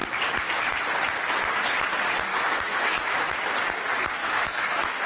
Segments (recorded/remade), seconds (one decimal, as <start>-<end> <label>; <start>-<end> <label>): 0.0-2.3 recorded; 2.3-3.3 remade; 3.3-4.2 recorded; 4.2-5.1 remade